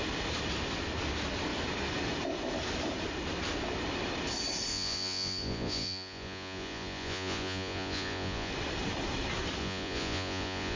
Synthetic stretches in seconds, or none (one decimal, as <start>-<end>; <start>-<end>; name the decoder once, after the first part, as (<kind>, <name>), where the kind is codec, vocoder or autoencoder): 4.7-8.5 (vocoder, Vocos); 9.6-10.8